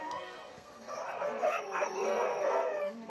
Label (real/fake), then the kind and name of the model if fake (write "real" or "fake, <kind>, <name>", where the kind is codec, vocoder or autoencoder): fake, codec, SNAC